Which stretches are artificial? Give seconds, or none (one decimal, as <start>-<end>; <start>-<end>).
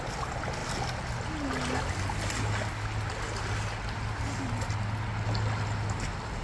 none